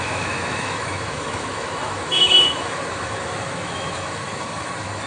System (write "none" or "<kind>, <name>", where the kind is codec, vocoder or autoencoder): autoencoder, DAC-VAE